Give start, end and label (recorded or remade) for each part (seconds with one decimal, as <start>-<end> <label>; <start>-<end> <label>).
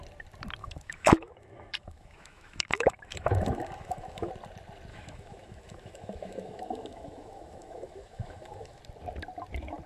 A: 0.0-0.6 recorded; 0.6-4.3 remade; 4.3-4.9 recorded; 4.9-8.8 remade; 8.8-9.9 recorded